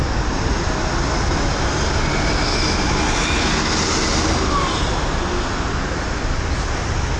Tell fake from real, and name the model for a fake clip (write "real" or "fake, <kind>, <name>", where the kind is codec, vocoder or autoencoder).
real